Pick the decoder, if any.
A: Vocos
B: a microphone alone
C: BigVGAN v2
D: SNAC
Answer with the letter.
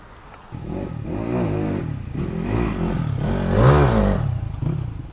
B